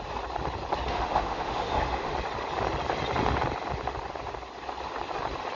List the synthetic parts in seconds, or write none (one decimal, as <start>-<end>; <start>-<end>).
0.9-2.1